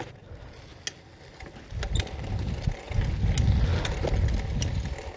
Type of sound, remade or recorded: recorded